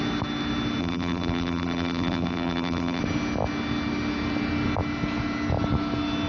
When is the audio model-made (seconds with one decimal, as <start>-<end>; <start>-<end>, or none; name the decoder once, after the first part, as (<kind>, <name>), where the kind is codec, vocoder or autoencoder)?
0.8-3.0 (vocoder, BigVGAN v2)